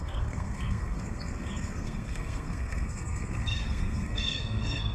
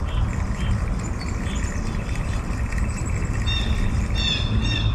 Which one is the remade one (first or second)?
first